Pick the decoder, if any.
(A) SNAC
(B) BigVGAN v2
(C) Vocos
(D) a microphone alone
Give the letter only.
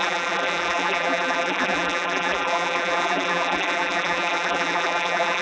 B